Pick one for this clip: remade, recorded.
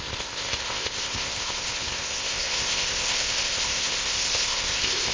remade